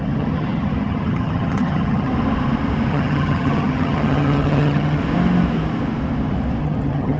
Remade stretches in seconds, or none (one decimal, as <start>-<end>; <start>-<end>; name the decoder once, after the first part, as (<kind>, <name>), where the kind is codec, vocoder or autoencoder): 0.0-2.1 (vocoder, HiFi-GAN); 2.9-5.0; 6.6-7.2